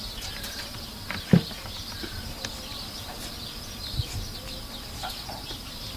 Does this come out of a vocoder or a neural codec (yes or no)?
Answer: no